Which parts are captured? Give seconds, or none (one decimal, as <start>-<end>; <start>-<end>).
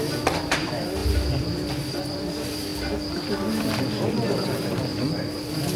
1.0-1.9; 2.7-3.5; 4.9-5.8